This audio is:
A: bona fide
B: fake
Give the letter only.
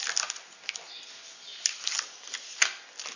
A